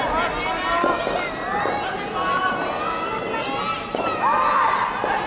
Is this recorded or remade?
recorded